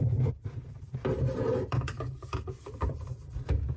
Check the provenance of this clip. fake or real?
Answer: fake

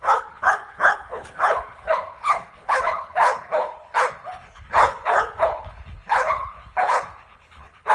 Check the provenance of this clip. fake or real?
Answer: fake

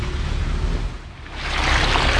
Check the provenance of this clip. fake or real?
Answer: real